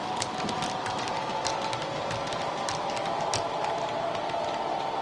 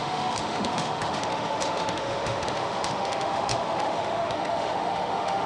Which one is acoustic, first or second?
first